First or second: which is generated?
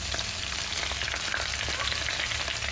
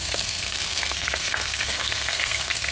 second